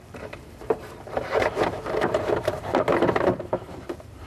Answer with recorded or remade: remade